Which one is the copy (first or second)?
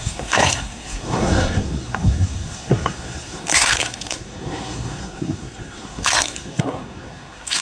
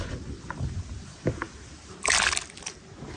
first